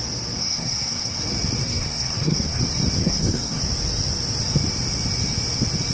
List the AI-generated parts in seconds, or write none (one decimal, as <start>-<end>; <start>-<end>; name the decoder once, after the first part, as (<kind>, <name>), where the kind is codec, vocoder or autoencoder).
0.4-1.2 (codec, SNAC); 1.6-2.6; 3.0-3.6